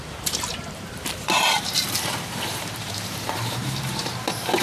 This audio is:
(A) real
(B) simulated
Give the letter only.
B